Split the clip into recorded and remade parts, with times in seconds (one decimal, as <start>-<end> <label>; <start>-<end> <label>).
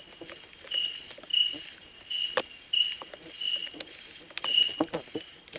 0.0-5.6 recorded